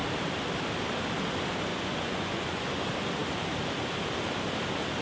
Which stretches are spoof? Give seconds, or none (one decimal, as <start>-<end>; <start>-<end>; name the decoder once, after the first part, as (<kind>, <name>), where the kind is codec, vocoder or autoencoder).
1.7-2.8 (vocoder, Vocos)